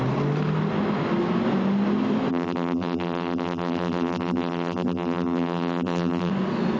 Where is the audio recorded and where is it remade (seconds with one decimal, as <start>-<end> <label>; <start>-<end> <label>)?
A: 0.0-2.3 recorded; 2.3-6.3 remade; 6.3-6.8 recorded